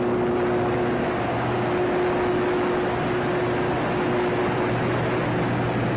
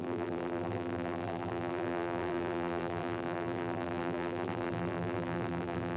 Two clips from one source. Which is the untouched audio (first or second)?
first